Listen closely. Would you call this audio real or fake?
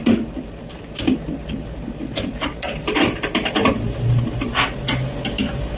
real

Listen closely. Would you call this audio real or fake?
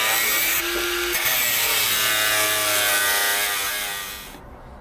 real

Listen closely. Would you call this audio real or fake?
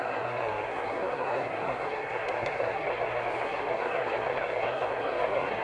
fake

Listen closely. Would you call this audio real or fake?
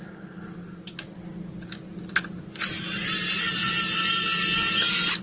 real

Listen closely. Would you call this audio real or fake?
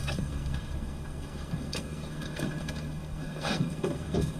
fake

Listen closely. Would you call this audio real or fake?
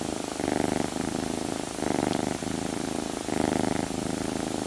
real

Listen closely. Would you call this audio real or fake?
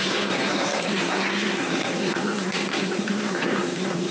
fake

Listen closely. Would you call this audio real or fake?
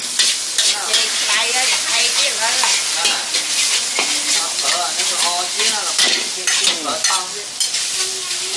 real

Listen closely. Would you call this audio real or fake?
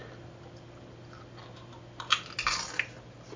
real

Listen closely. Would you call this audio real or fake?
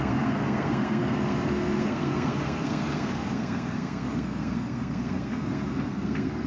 fake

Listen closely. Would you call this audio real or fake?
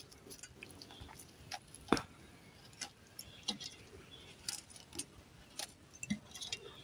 real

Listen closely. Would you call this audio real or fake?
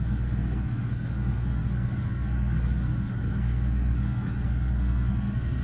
fake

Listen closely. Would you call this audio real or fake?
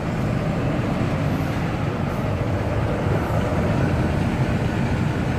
real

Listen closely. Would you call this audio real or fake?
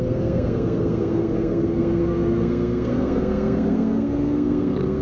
fake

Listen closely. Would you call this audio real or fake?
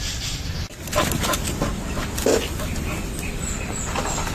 real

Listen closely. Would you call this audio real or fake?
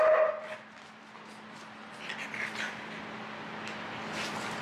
real